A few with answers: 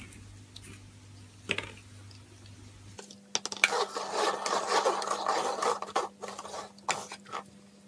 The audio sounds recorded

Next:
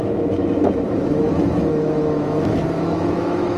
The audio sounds remade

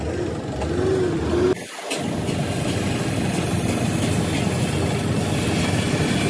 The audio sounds recorded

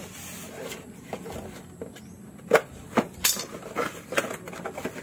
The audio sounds recorded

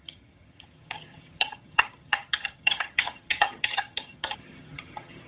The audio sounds remade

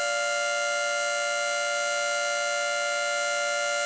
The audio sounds recorded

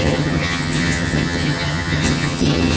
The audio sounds remade